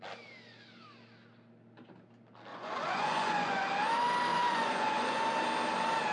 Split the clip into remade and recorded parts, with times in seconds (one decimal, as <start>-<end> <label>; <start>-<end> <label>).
0.0-2.5 recorded; 2.5-3.7 remade; 3.7-4.3 recorded; 4.3-5.3 remade; 5.3-6.1 recorded